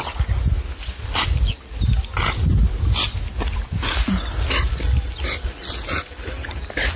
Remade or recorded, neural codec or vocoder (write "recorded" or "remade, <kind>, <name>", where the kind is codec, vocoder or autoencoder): recorded